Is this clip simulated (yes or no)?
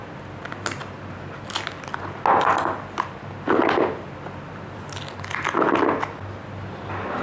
no